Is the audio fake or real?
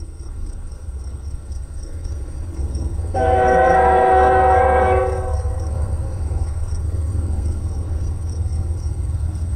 fake